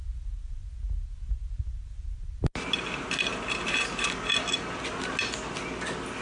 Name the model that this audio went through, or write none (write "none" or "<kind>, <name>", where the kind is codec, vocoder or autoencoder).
none